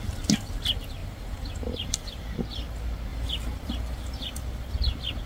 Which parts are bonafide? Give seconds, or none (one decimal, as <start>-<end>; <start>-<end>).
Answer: 0.0-1.0; 2.2-3.1; 3.7-5.3